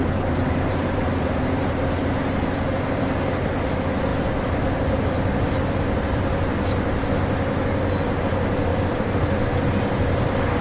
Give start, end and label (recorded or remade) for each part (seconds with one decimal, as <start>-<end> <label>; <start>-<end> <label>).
0.0-1.9 remade; 1.9-8.7 recorded; 8.7-9.3 remade; 9.3-10.6 recorded